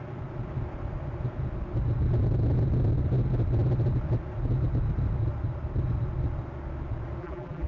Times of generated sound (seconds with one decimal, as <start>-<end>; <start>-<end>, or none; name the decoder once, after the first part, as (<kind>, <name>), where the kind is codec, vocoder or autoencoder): 7.2-7.7 (vocoder, BigVGAN v2)